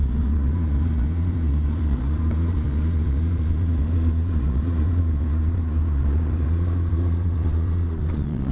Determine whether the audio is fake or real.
fake